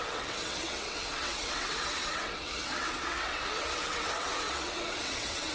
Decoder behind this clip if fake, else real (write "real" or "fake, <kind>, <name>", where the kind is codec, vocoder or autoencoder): fake, vocoder, WaveNeXt